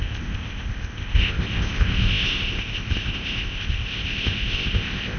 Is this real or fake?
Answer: fake